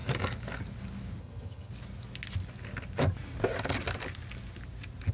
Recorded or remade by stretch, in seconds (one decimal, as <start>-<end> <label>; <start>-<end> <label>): 0.0-1.2 recorded; 1.2-1.7 remade; 1.7-5.1 recorded